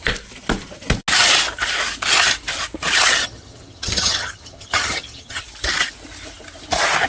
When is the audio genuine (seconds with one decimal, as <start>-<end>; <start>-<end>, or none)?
0.0-3.2; 5.4-7.1